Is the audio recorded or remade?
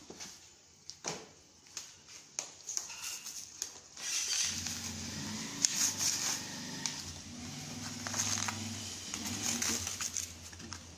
recorded